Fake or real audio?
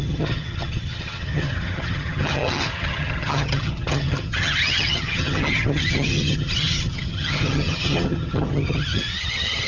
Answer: fake